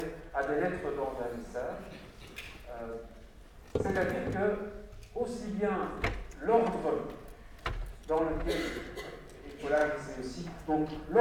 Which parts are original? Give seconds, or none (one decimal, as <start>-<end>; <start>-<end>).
0.0-11.2